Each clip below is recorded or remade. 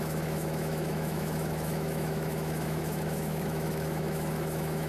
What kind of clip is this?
remade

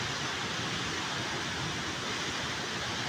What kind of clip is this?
recorded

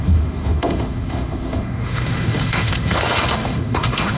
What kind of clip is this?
remade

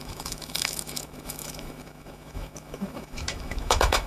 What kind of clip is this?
remade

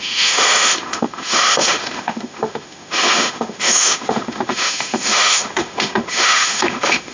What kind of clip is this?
remade